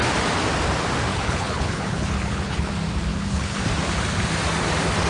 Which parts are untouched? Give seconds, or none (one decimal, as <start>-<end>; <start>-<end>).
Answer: 0.0-1.1; 2.7-3.1; 3.6-5.1